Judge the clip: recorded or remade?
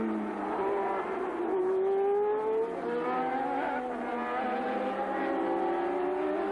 recorded